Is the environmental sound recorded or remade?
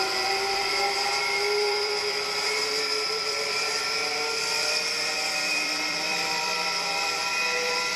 remade